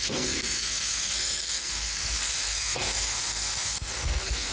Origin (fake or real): fake